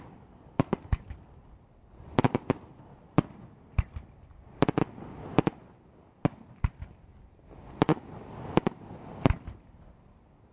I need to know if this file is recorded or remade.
recorded